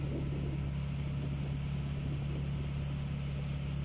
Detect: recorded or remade recorded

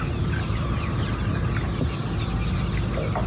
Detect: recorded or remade recorded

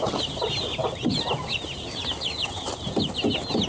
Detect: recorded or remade recorded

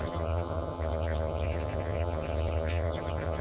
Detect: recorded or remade remade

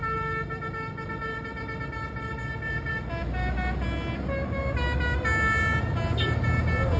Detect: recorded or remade recorded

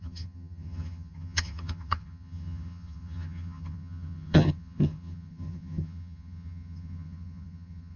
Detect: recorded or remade remade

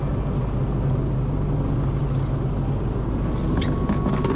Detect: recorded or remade recorded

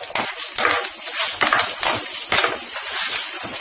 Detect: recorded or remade recorded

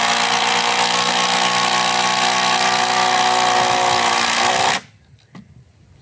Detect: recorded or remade recorded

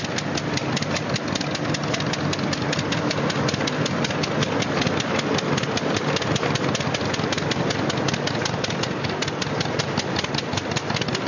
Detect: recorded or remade recorded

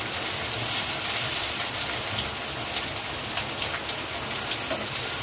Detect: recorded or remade recorded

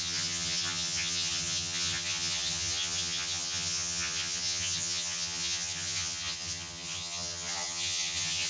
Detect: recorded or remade remade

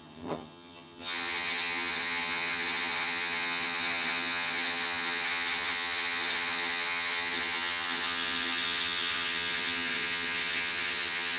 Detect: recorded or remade remade